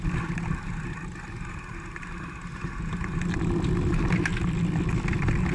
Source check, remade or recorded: recorded